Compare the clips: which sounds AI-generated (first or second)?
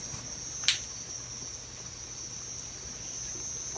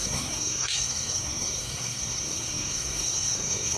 second